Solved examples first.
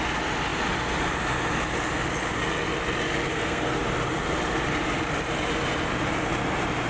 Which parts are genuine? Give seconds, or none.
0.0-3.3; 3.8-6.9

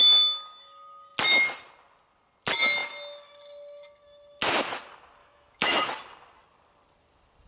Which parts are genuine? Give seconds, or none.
0.0-5.2; 5.8-7.5

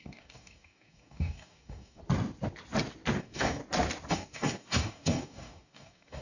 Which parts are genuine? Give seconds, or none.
2.0-3.2; 3.6-4.1

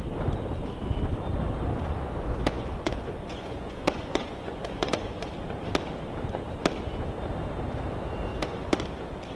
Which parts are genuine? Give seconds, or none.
0.0-1.7; 5.3-8.3; 8.8-9.4

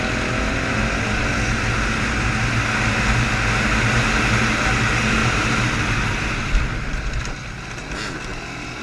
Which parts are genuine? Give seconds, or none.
0.0-5.2; 7.2-8.8

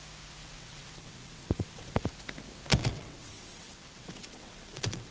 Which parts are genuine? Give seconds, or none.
0.0-0.4; 2.1-2.8

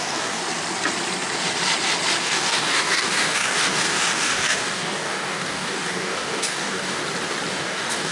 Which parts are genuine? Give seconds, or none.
0.4-2.2; 7.0-7.5